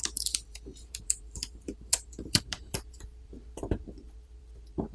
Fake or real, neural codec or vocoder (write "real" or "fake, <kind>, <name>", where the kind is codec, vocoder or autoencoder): fake, vocoder, BigVGAN v2